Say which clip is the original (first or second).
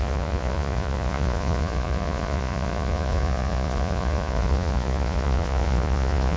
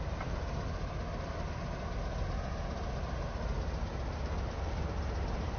second